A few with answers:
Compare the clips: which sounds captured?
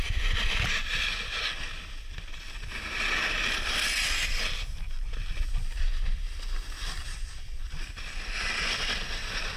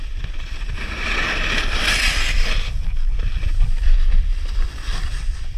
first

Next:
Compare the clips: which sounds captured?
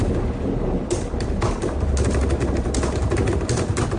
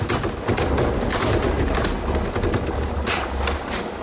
second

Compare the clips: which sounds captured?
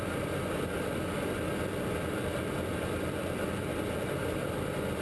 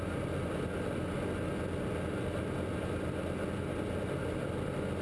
second